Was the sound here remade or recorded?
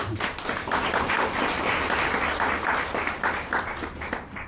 recorded